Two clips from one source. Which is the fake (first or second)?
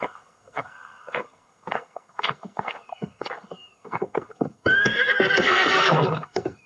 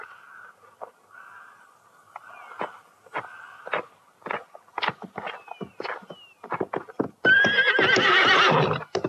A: first